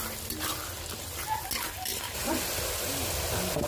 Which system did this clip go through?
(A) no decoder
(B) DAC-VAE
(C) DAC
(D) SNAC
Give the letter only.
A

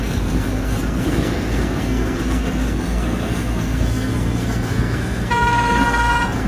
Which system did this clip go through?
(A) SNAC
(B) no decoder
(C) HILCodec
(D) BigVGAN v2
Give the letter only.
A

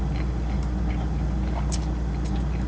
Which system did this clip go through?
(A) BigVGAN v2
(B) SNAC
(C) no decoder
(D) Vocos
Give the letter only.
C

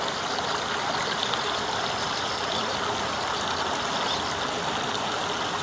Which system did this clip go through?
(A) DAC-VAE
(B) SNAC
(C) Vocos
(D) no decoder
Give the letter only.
D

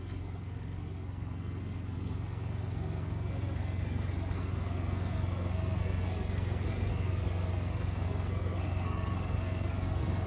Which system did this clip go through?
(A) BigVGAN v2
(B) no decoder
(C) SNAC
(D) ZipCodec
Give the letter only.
C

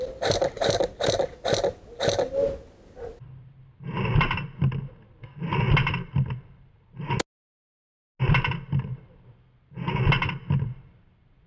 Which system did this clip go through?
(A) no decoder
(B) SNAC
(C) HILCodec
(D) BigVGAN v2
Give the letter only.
A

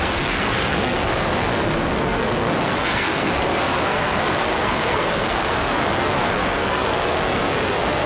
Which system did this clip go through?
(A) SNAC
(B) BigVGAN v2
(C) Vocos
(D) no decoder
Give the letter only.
A